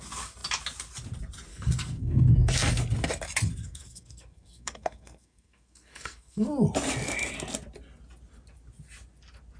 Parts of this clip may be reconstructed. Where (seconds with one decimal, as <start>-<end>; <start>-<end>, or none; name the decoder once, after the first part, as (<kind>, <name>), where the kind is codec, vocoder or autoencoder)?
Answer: 1.5-2.8 (codec, SNAC); 3.6-6.5